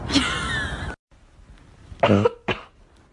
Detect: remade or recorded recorded